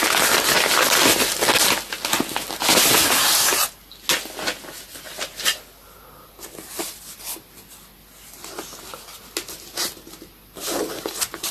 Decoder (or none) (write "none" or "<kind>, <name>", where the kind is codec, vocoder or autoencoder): none